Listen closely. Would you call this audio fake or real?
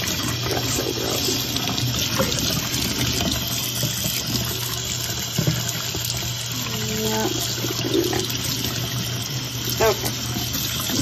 real